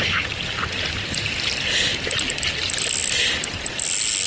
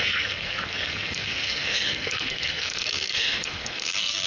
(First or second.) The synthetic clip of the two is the second